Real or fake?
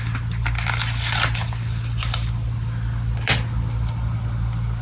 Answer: real